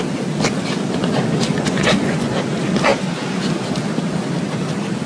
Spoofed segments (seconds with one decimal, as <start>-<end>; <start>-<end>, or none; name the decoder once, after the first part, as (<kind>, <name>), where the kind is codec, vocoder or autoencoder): 1.5-2.3 (vocoder, Vocos)